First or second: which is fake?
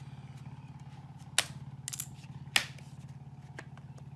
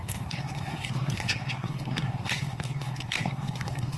second